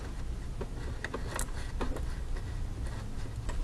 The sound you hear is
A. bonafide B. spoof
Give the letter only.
A